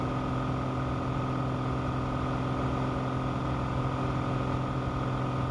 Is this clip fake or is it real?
real